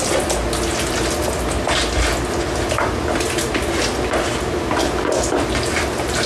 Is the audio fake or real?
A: real